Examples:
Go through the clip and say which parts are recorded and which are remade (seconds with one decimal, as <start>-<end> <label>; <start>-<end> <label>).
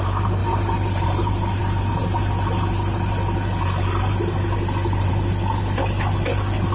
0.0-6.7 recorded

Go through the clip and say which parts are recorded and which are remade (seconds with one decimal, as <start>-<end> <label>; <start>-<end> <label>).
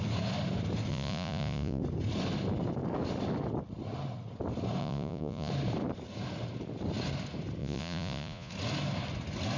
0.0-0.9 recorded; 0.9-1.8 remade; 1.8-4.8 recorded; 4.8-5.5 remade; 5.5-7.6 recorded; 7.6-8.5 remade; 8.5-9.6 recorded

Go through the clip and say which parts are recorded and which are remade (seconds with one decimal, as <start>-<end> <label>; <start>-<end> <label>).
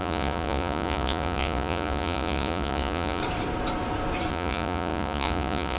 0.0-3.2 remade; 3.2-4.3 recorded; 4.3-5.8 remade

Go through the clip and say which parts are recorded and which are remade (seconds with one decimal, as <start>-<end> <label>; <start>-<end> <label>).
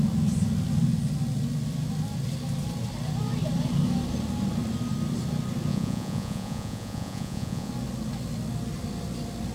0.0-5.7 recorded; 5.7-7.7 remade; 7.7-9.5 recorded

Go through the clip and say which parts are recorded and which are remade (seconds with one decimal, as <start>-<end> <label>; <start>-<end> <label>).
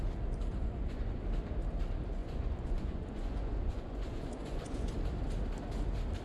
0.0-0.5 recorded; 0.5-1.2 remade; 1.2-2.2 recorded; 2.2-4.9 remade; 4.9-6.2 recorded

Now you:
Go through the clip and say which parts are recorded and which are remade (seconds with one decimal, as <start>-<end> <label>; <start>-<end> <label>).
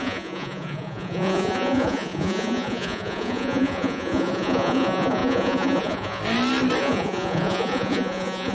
0.0-6.2 remade; 6.2-6.8 recorded; 6.8-8.5 remade